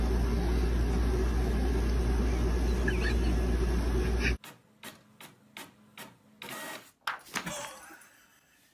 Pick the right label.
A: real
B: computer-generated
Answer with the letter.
A